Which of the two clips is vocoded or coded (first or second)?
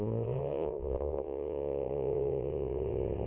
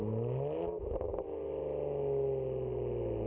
first